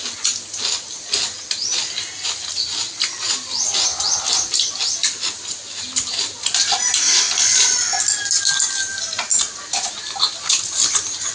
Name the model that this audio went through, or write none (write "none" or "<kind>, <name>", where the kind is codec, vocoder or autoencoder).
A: none